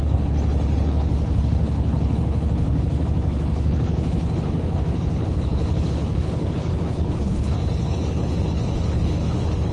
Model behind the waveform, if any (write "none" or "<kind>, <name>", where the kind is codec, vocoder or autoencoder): codec, HILCodec